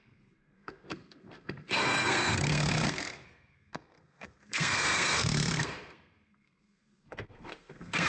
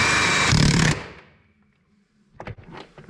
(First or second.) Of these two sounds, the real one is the second